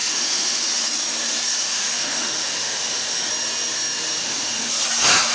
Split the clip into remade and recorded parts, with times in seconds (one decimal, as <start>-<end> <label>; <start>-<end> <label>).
0.0-0.6 remade; 0.6-1.6 recorded; 1.6-3.3 remade; 3.3-4.2 recorded; 4.2-4.7 remade; 4.7-5.3 recorded